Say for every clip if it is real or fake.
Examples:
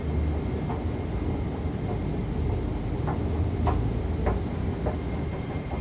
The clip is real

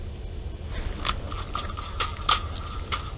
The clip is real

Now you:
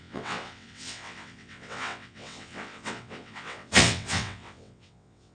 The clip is fake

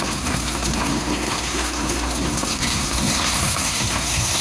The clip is fake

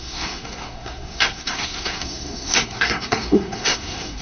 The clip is fake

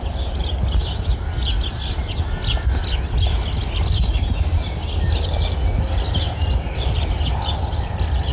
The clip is real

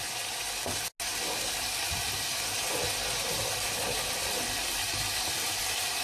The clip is real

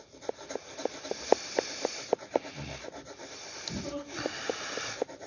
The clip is real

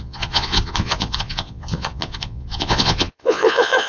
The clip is fake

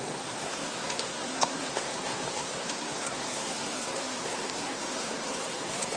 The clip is fake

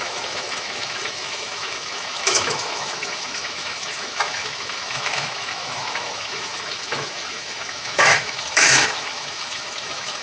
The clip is fake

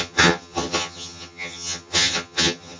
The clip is fake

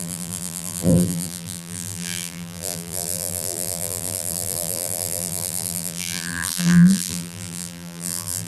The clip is fake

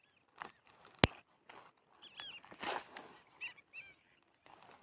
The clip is real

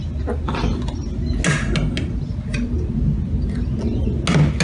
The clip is real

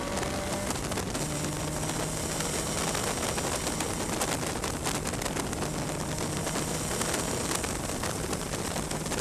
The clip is real